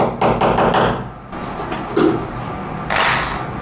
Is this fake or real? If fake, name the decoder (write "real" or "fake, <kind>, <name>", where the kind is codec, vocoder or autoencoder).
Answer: real